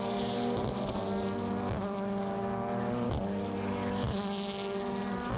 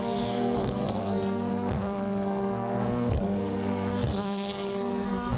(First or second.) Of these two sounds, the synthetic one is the second